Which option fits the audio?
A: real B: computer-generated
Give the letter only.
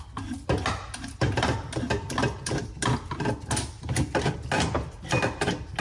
A